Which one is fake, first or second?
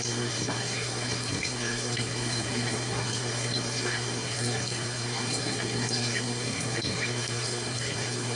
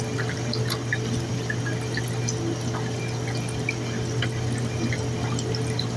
first